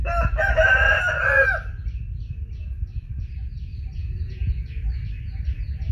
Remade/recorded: recorded